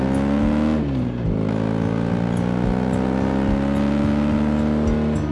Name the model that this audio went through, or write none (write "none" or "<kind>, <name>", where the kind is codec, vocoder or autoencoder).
none